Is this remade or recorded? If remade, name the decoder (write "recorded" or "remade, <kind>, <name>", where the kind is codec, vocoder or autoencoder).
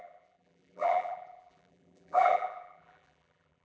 remade, vocoder, BigVGAN v2